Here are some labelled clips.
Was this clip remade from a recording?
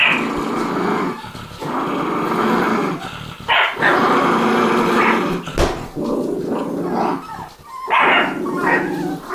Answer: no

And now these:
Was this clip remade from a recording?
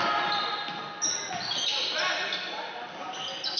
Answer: no